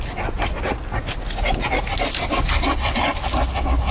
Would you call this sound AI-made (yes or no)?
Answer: no